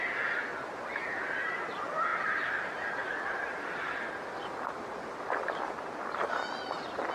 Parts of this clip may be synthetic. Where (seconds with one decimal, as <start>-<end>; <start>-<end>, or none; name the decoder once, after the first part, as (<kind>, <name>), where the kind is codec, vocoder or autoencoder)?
none